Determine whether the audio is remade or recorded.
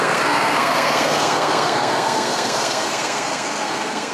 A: remade